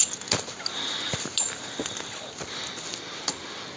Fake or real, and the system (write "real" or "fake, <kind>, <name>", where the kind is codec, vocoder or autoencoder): real